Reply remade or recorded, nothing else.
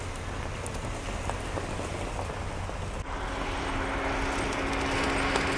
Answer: recorded